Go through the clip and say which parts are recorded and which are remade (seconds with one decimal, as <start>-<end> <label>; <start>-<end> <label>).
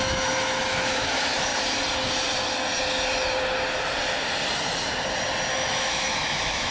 0.0-1.5 remade; 1.5-5.5 recorded; 5.5-6.7 remade